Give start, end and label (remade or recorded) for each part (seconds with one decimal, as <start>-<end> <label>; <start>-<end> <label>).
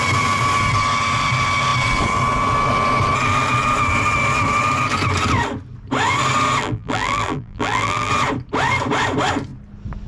0.0-6.6 recorded; 6.6-8.1 remade; 8.1-10.1 recorded